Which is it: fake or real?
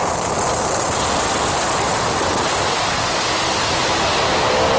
real